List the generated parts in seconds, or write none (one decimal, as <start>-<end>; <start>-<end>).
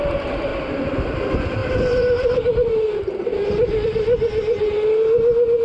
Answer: 0.5-1.2; 1.6-2.3; 3.3-4.3